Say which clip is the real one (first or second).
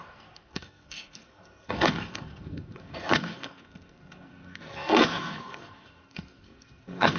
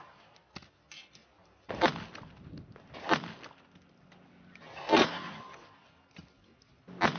second